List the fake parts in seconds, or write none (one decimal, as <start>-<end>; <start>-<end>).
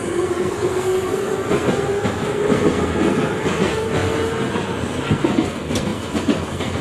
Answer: 0.0-6.8